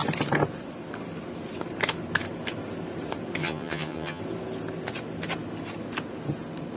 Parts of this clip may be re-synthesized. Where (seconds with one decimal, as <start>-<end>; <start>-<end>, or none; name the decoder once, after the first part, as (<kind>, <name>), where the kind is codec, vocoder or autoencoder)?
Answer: 3.4-4.2 (vocoder, HiFi-GAN)

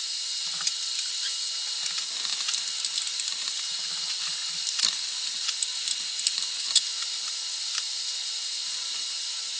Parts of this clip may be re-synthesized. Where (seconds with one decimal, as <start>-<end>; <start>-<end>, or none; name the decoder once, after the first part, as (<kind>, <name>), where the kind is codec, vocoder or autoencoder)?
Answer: none